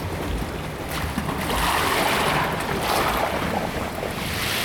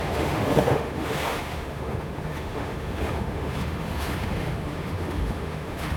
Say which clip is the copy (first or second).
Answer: second